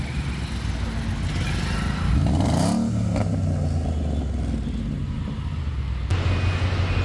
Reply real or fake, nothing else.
real